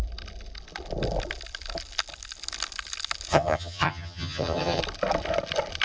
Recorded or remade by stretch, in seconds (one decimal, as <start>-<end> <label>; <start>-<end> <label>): 0.0-3.3 recorded; 3.3-4.8 remade; 4.8-5.8 recorded